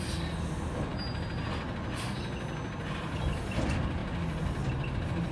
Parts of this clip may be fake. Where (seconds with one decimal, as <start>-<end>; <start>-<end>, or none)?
none

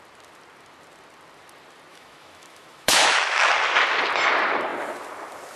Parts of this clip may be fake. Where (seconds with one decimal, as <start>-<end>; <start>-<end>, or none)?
1.9-3.5

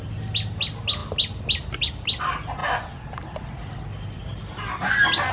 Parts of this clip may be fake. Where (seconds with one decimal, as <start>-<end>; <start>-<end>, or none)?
none

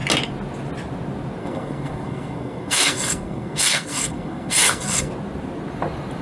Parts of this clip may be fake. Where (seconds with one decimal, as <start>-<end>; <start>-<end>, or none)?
1.4-5.1

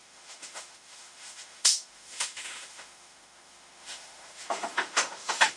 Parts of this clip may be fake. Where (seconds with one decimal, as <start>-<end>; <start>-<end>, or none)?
0.0-5.6